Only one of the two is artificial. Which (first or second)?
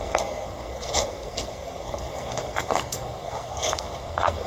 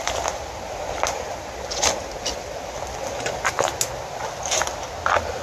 first